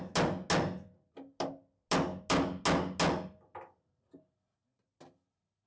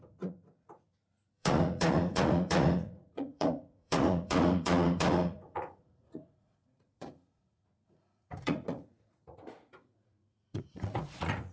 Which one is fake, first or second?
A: second